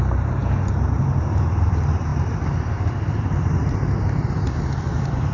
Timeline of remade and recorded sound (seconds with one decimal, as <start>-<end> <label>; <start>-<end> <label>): 0.0-0.4 remade; 0.4-1.2 recorded; 1.2-5.3 remade